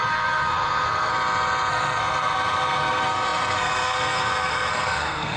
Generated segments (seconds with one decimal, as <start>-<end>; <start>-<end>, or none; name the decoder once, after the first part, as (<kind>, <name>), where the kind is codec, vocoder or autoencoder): 0.0-1.1 (codec, SNAC); 1.7-5.4